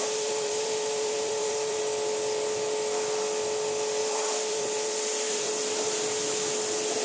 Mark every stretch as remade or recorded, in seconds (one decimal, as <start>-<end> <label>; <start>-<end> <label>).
0.0-1.8 remade; 1.8-4.0 recorded; 4.0-5.5 remade; 5.5-7.0 recorded